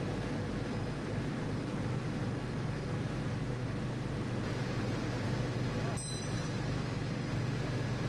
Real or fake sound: real